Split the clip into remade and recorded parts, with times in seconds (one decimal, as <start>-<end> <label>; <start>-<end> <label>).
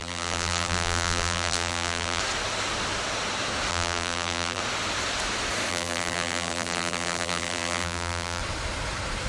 0.0-2.2 remade; 2.2-3.7 recorded; 3.7-4.6 remade; 4.6-5.7 recorded; 5.7-8.4 remade; 8.4-9.3 recorded